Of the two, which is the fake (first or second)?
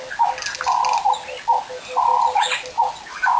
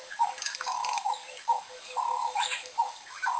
second